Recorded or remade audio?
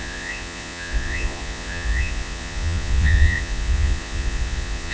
remade